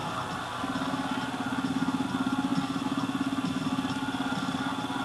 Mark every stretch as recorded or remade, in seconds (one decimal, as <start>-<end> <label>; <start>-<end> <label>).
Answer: 0.0-5.0 recorded